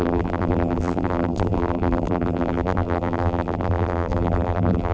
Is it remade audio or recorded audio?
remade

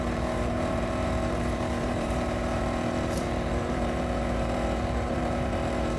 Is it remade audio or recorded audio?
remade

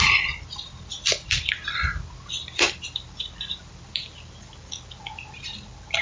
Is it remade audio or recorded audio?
remade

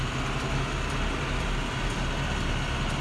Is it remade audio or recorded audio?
recorded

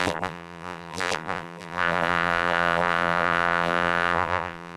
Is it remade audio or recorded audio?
remade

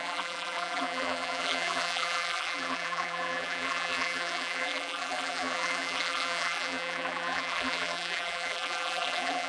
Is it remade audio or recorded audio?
remade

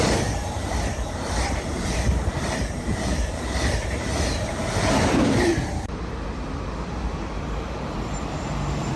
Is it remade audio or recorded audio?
remade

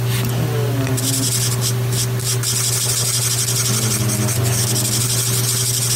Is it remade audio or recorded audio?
recorded